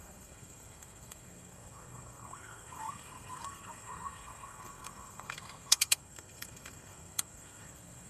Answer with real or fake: fake